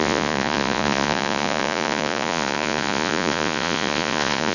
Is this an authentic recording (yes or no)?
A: no